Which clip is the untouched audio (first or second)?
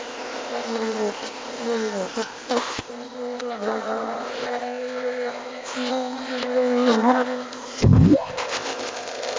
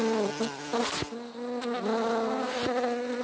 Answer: second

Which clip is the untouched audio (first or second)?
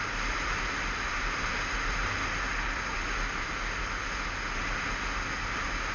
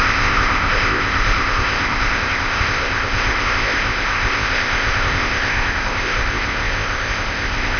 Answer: first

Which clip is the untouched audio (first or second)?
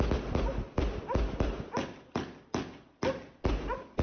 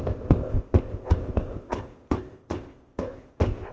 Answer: first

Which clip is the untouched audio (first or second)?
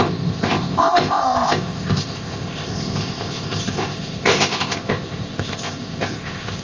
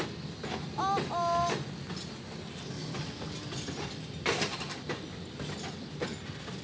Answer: second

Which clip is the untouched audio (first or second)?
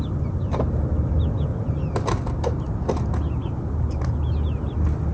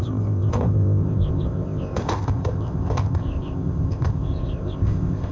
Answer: first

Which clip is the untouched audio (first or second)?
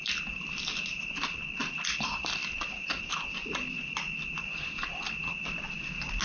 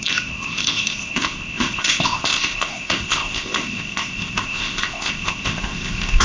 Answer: first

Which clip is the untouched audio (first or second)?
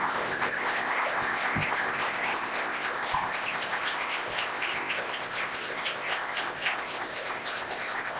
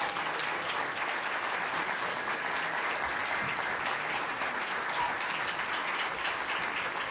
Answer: second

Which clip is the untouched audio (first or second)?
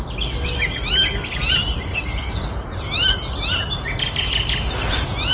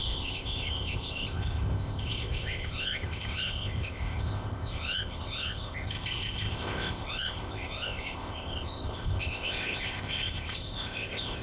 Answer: first